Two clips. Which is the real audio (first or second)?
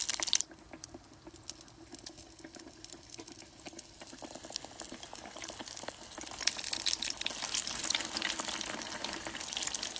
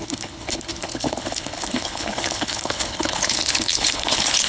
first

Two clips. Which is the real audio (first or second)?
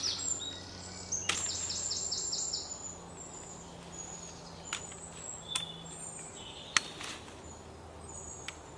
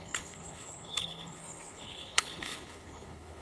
first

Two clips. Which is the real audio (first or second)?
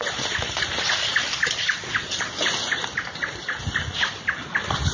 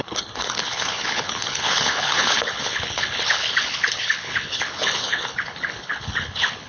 first